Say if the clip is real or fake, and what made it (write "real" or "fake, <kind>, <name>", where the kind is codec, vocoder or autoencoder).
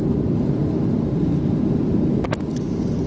real